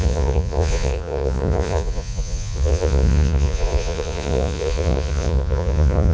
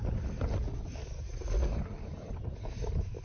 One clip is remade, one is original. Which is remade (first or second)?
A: first